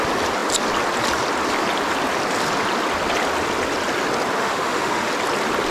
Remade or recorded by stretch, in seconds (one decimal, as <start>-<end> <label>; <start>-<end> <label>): 0.0-4.4 recorded; 4.4-5.1 remade; 5.1-5.7 recorded